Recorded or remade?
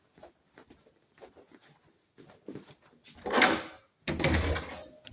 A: recorded